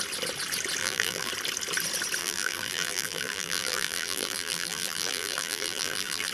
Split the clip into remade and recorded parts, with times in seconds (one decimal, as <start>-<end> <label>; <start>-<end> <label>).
0.0-0.8 recorded; 0.8-1.3 remade; 1.3-2.2 recorded; 2.2-6.3 remade